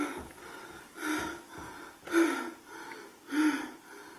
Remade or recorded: recorded